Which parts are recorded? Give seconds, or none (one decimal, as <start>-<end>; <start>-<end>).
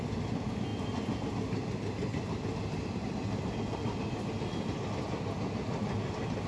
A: 0.0-6.5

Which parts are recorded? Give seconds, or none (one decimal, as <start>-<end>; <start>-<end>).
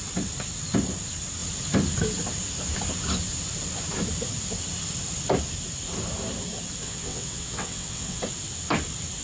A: 0.0-6.8; 8.2-9.2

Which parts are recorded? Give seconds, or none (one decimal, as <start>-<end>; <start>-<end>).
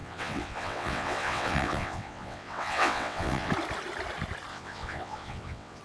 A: 3.5-4.5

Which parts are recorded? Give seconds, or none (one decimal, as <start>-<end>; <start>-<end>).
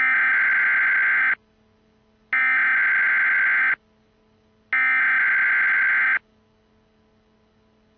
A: 0.0-8.0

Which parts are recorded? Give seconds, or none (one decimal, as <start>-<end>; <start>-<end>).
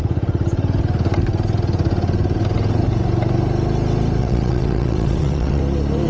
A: 0.0-4.2; 5.6-6.1